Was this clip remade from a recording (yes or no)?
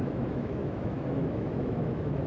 yes